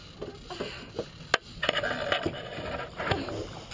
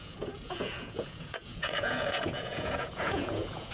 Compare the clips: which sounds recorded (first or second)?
first